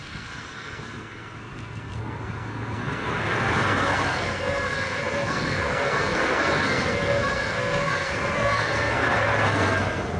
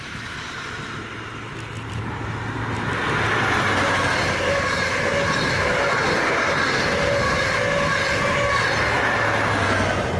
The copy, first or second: first